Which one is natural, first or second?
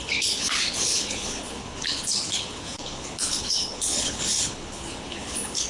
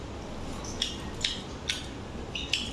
second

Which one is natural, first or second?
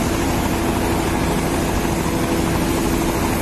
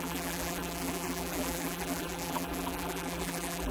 first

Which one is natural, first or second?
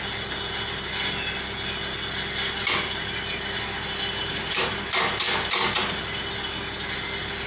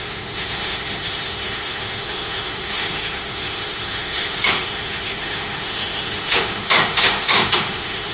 first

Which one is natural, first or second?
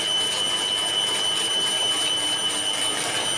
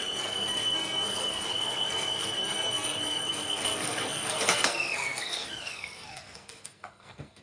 first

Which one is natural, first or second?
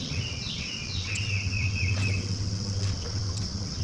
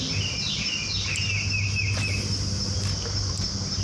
second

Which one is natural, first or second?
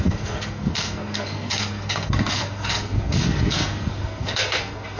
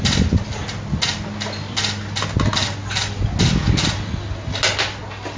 second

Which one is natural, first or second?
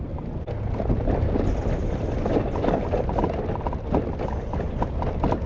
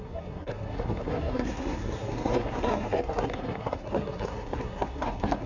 first